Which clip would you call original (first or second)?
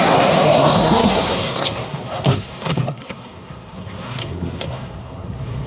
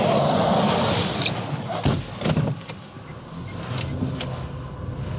second